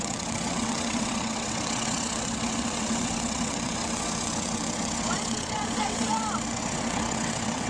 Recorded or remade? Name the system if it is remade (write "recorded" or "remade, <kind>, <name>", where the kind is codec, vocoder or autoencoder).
remade, vocoder, WaveNeXt